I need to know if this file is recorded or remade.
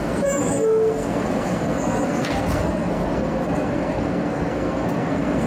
remade